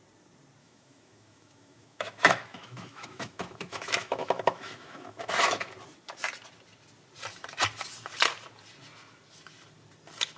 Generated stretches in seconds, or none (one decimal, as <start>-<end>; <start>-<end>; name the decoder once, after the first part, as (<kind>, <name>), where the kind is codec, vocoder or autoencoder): 0.6-5.7 (autoencoder, DAC-VAE)